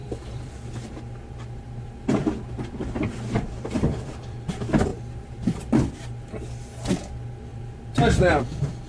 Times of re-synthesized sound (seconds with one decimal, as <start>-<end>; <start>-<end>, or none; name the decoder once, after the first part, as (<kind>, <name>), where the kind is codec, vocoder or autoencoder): 0.0-4.5 (vocoder, BigVGAN v2); 4.9-5.9; 7.5-8.4